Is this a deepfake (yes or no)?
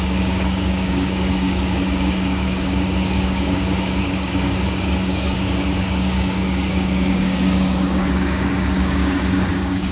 yes